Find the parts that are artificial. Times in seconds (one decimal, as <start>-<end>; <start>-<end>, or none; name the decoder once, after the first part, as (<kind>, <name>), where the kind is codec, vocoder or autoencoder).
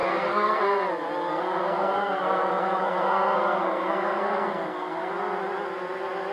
0.0-0.6 (codec, SNAC); 1.3-5.1